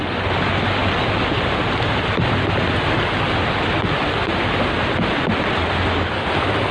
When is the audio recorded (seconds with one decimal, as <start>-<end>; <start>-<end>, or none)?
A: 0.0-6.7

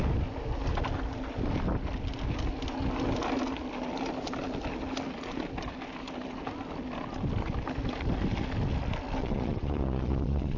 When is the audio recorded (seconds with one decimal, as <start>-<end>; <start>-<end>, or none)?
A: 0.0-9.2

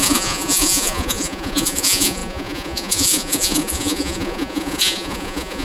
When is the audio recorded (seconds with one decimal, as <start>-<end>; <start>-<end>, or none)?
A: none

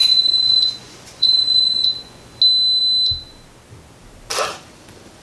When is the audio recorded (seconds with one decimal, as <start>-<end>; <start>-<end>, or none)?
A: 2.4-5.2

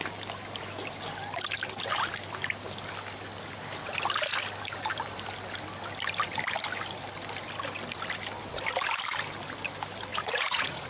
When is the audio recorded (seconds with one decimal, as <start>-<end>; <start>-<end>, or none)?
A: 0.0-10.1